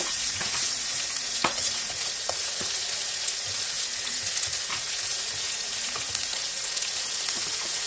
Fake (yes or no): yes